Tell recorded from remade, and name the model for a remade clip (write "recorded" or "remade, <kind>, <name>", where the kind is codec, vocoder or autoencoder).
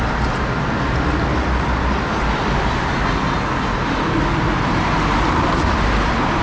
recorded